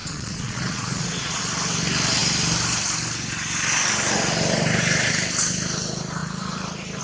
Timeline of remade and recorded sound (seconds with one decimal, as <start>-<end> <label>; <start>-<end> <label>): 0.0-1.4 remade; 1.4-7.0 recorded